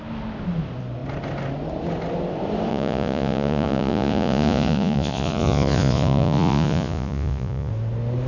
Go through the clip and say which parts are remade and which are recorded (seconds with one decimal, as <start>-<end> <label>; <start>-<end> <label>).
0.0-2.7 recorded; 2.7-7.7 remade; 7.7-8.3 recorded